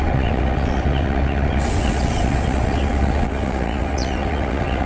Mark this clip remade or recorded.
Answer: remade